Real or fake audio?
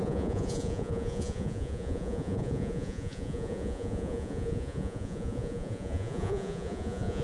fake